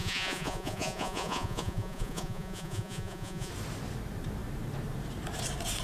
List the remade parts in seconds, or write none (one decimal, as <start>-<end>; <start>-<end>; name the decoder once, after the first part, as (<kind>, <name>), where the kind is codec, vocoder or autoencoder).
0.0-3.5 (vocoder, Vocos)